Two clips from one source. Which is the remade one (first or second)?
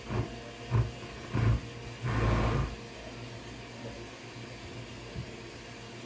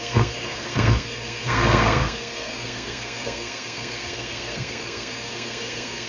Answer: second